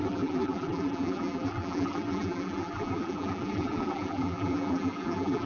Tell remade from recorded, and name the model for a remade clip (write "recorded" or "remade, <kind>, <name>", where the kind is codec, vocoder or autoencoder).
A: remade, vocoder, BigVGAN v2